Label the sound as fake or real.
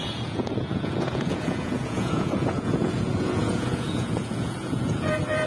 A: fake